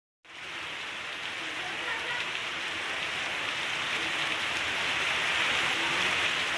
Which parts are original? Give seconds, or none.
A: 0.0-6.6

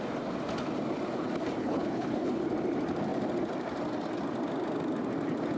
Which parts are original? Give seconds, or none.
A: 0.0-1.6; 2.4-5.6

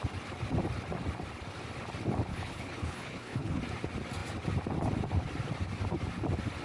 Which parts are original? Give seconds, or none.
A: 0.0-2.3; 3.6-6.6

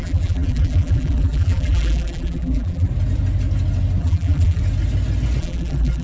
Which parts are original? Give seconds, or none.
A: 2.9-4.0; 4.6-5.4

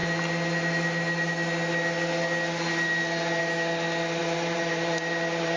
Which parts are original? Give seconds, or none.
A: 0.0-4.2